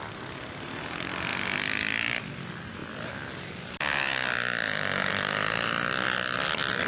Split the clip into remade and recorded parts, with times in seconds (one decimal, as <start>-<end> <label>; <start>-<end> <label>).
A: 0.0-6.9 recorded